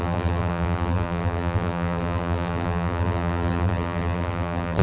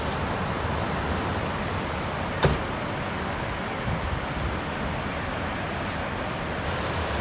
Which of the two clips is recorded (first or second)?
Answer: second